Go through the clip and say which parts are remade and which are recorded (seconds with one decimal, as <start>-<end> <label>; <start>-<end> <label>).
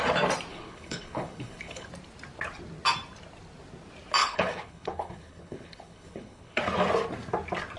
0.0-0.5 recorded; 0.5-1.9 remade; 1.9-4.2 recorded; 4.2-6.6 remade; 6.6-7.8 recorded